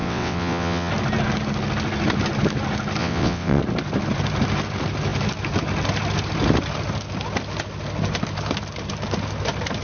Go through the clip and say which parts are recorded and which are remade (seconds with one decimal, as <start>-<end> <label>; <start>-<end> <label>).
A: 0.0-0.9 remade; 0.9-3.0 recorded; 3.0-3.6 remade; 3.6-9.8 recorded